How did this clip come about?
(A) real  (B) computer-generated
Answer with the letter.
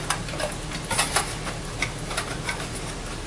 A